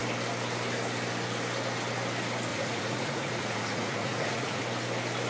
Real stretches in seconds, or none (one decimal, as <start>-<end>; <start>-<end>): 0.0-2.5; 4.6-5.3